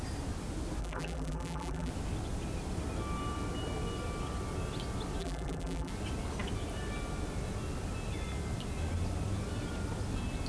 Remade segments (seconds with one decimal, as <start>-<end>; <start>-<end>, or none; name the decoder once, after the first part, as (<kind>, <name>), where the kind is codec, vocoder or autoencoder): 0.8-1.9 (vocoder, BigVGAN v2); 5.2-5.9